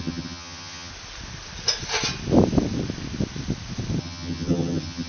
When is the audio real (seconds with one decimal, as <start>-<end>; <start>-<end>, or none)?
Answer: 0.9-4.0